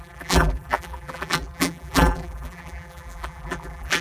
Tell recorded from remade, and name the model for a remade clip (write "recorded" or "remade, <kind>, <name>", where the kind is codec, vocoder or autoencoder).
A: remade, vocoder, BigVGAN v2